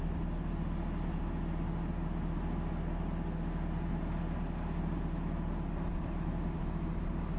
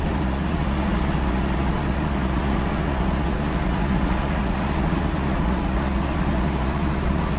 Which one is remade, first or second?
second